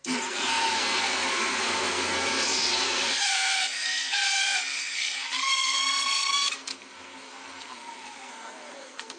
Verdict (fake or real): fake